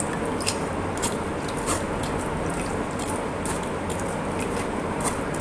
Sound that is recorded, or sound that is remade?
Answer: recorded